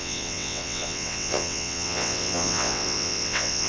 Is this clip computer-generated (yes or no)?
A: yes